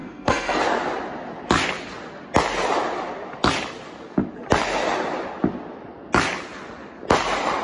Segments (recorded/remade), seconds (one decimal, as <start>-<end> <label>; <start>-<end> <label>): 0.0-0.6 remade; 0.6-7.6 recorded